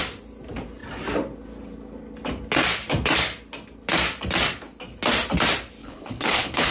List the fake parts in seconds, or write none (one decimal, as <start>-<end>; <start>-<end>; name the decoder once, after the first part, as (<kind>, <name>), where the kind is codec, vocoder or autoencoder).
5.8-6.7 (codec, HILCodec)